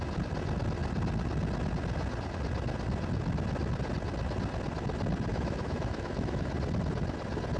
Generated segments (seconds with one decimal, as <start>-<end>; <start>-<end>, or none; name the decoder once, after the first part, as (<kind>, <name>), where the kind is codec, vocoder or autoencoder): 5.3-6.5 (autoencoder, DAC-VAE)